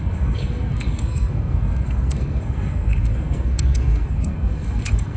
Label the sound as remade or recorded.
remade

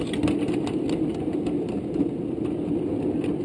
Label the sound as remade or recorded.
recorded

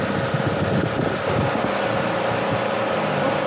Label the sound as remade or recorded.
recorded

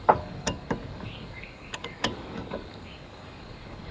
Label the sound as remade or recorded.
remade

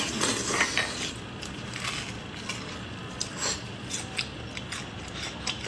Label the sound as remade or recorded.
recorded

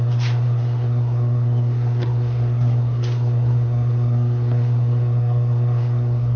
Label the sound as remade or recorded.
remade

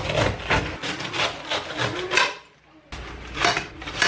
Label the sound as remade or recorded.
recorded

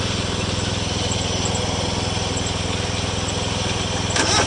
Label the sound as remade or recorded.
recorded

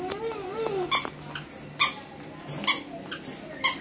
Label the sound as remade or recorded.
recorded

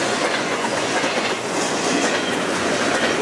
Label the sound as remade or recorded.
remade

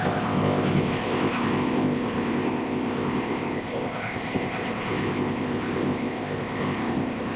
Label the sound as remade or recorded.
remade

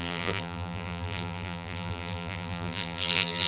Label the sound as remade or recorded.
remade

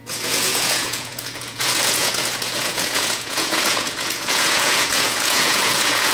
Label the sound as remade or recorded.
remade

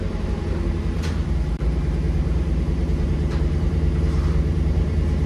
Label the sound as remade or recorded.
remade